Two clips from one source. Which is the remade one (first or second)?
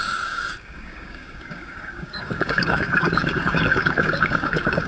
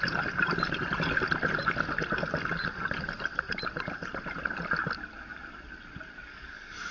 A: first